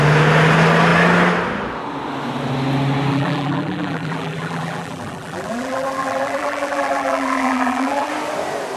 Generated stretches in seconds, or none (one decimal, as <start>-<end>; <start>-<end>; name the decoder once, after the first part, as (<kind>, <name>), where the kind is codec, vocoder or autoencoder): 3.1-8.1 (vocoder, BigVGAN v2)